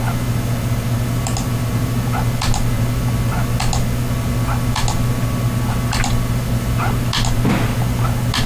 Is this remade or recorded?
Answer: recorded